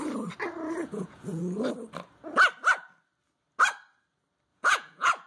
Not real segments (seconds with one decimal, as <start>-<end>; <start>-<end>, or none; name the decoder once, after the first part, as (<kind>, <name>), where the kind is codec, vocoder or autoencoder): 0.8-1.4 (vocoder, Vocos); 4.5-5.3